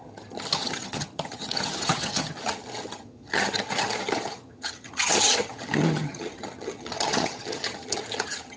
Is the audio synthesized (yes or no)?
yes